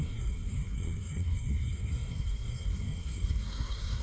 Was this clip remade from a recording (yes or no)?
yes